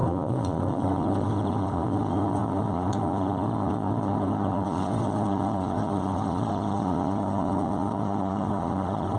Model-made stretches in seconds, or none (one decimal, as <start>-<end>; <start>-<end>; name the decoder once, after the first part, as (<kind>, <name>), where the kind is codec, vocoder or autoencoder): 0.0-9.2 (vocoder, Vocos)